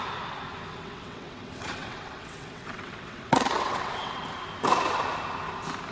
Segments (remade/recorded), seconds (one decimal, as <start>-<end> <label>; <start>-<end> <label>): 0.0-0.7 recorded; 0.7-4.2 remade; 4.2-5.9 recorded